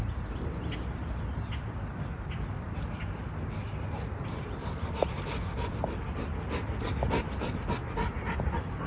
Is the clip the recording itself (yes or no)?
yes